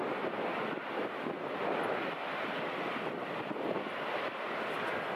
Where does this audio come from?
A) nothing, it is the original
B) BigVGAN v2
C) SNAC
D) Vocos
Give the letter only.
A